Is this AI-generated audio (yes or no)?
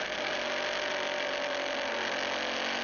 no